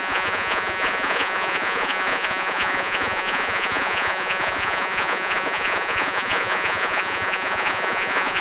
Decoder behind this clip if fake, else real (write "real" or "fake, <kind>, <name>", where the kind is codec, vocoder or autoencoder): fake, vocoder, Vocos